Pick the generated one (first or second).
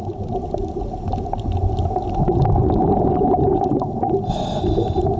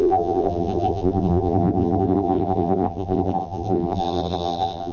second